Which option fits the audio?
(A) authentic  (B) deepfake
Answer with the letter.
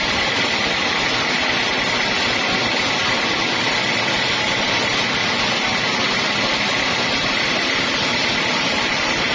A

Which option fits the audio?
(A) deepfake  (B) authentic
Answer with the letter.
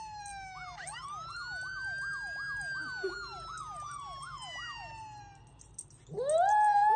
B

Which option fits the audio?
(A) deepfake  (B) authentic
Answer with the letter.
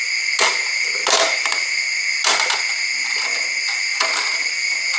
B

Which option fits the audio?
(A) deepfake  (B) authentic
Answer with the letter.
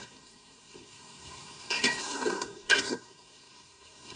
A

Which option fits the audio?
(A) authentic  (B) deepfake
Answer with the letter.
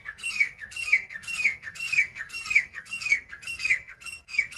B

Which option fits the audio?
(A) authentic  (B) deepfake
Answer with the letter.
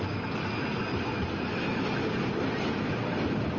A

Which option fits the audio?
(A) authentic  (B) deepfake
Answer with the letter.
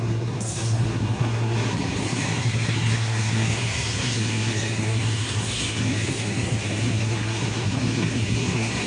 B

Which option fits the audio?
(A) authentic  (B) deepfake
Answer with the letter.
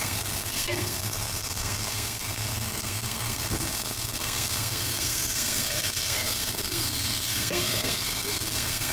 B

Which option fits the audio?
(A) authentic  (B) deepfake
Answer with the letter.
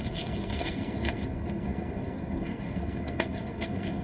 B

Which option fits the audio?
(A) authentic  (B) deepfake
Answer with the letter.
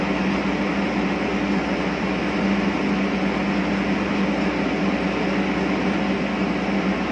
A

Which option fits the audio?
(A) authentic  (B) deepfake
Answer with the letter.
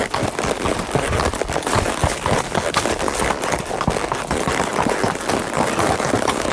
A